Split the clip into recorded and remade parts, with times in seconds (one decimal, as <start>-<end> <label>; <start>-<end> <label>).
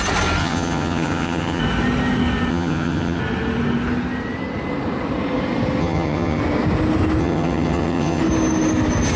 0.0-0.4 recorded; 0.4-1.6 remade; 1.6-2.5 recorded; 2.5-3.2 remade; 3.2-5.8 recorded; 5.8-6.4 remade; 6.4-7.2 recorded; 7.2-8.2 remade; 8.2-9.2 recorded